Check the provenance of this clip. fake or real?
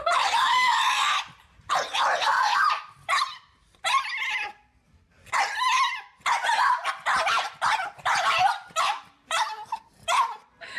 fake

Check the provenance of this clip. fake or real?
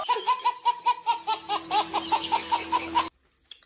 real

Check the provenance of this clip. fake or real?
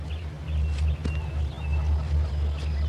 real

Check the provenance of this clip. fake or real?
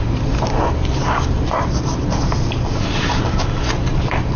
fake